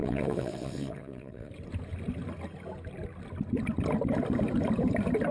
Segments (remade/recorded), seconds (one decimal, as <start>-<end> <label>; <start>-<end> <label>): 0.0-1.5 remade; 1.5-5.3 recorded